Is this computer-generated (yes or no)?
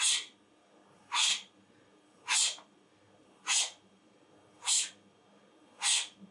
no